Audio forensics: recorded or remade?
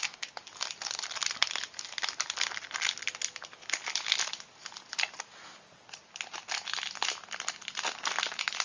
recorded